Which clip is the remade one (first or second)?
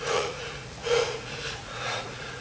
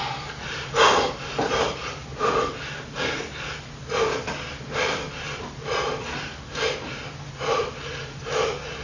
first